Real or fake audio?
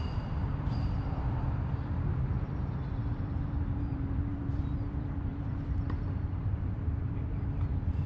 fake